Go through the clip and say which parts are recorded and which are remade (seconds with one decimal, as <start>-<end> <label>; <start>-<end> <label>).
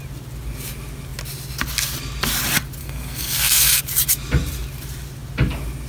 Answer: 0.0-2.8 recorded; 2.8-3.8 remade; 3.8-5.9 recorded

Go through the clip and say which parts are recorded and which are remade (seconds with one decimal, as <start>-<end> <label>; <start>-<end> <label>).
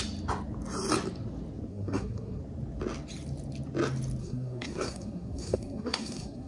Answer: 0.0-1.7 recorded; 1.7-2.4 remade; 2.4-4.2 recorded; 4.2-6.5 remade